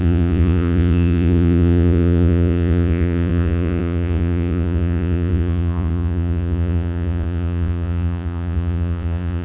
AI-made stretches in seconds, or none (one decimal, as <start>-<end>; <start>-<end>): 0.0-9.4